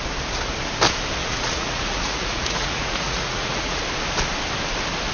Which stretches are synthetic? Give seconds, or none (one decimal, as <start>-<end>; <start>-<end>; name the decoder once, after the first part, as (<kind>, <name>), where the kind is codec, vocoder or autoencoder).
1.2-3.8 (vocoder, Vocos)